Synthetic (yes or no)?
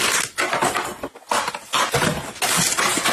no